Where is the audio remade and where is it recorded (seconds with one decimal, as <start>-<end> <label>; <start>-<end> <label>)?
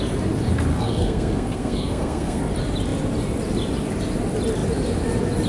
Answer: 0.0-0.7 recorded; 0.7-2.4 remade; 2.4-5.5 recorded